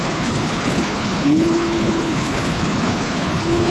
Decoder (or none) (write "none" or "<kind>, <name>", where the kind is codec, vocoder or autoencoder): codec, HILCodec